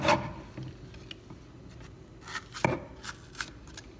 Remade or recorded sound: recorded